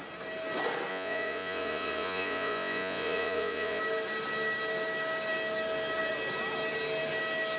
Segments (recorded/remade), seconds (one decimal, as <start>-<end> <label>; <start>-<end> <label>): 0.0-0.9 recorded; 0.9-3.8 remade; 3.8-7.6 recorded